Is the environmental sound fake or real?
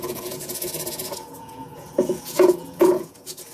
fake